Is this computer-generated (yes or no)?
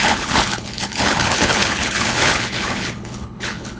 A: yes